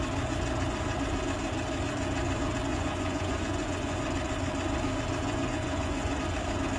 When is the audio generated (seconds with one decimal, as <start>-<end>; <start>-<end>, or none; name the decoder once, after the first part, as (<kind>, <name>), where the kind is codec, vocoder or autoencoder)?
2.7-4.0 (vocoder, Vocos); 5.2-6.2